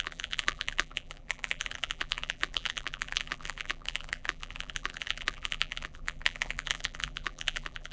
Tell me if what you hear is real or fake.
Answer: fake